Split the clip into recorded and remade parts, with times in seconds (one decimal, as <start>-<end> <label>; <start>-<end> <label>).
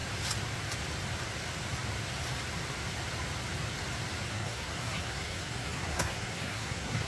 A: 0.0-4.3 recorded; 4.3-7.1 remade